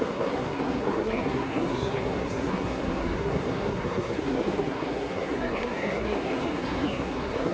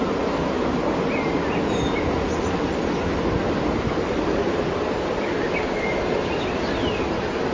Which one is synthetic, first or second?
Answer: first